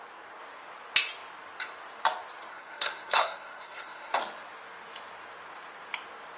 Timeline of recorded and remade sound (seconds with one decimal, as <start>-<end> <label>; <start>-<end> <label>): 0.0-2.5 recorded; 2.5-4.2 remade; 4.2-6.4 recorded